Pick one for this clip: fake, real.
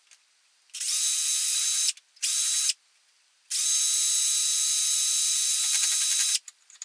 real